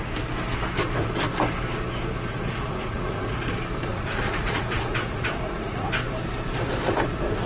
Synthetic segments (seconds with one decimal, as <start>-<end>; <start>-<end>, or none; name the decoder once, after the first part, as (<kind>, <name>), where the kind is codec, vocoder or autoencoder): 2.3-3.4 (vocoder, Vocos); 3.9-5.9